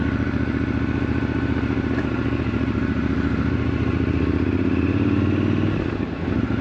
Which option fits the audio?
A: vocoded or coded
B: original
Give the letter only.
B